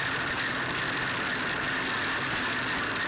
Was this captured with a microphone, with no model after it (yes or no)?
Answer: yes